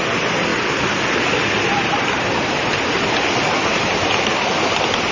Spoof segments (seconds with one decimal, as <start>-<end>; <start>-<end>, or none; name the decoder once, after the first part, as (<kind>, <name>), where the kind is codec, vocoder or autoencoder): none